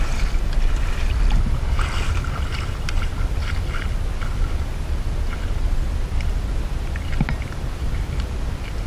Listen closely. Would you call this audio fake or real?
real